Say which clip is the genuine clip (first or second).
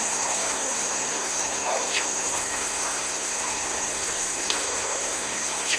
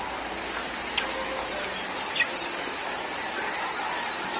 second